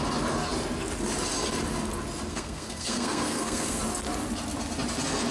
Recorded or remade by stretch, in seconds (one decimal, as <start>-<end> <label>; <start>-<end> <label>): 0.0-2.3 recorded; 2.3-3.8 remade; 3.8-5.3 recorded